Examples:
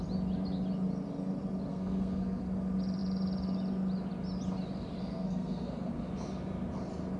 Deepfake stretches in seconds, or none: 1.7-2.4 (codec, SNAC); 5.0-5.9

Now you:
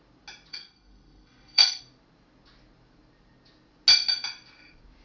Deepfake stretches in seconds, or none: 0.5-1.8 (codec, SNAC)

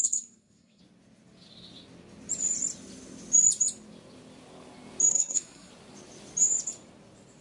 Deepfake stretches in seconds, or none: 0.0-0.8 (codec, SNAC); 5.1-5.7

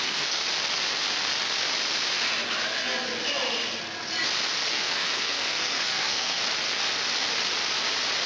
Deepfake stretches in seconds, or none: 0.0-0.4 (codec, SNAC); 4.7-6.4

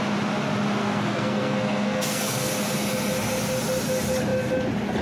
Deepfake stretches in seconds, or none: 0.8-2.5 (codec, SNAC)

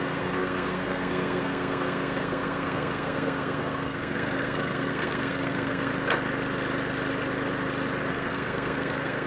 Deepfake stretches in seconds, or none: 0.0-5.9 (codec, SNAC); 8.1-9.3

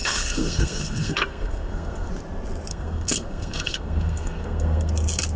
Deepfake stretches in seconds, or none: 0.0-2.1 (codec, SNAC); 2.7-4.9